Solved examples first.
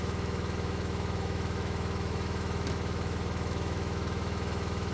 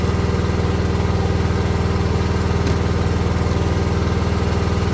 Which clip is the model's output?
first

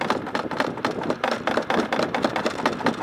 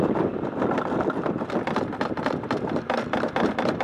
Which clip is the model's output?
second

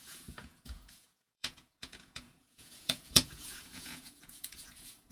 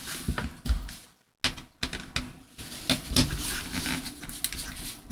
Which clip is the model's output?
first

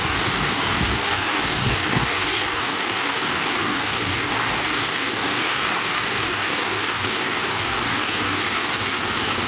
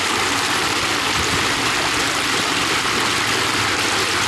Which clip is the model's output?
first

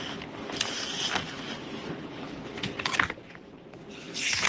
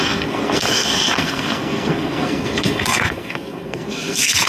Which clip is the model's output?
second